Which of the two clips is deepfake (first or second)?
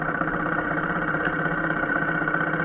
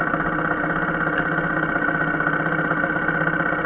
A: first